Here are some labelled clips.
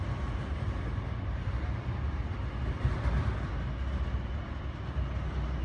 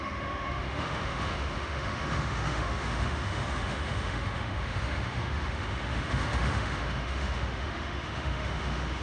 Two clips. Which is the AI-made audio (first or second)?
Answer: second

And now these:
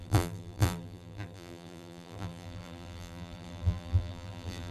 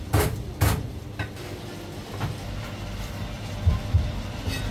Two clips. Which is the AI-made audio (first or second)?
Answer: first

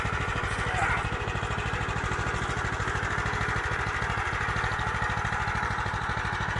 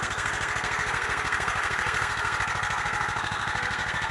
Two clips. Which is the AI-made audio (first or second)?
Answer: second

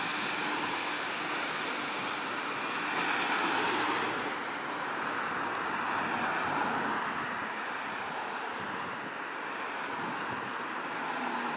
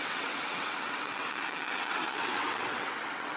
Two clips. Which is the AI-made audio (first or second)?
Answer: second